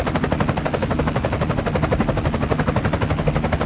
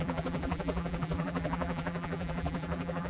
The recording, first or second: first